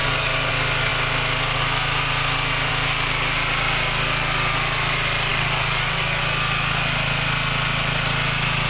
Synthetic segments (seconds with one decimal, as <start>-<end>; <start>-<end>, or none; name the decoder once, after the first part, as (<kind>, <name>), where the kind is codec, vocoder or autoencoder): 0.0-0.5 (codec, DAC); 5.3-6.2